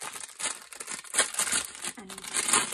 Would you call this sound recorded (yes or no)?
yes